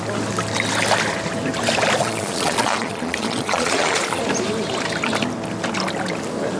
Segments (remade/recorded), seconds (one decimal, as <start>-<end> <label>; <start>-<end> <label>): 0.0-2.0 recorded; 2.0-4.2 remade; 4.2-6.6 recorded